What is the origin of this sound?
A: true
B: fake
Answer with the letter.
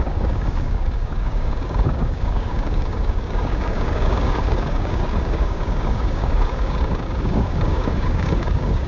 B